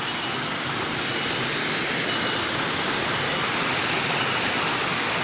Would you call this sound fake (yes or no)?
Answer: no